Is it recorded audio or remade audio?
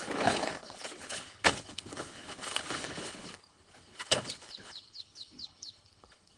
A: remade